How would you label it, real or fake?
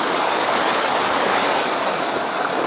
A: fake